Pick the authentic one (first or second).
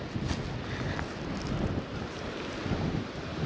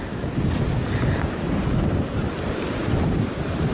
first